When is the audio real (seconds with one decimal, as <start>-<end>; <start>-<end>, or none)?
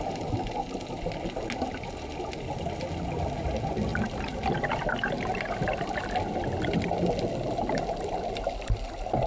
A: 0.0-3.9; 6.0-9.3